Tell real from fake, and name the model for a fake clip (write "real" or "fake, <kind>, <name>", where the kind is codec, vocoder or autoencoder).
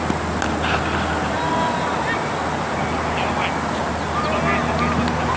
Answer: real